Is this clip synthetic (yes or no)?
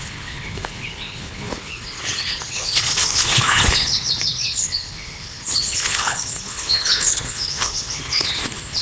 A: yes